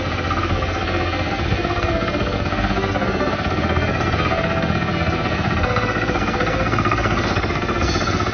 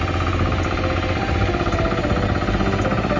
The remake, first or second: first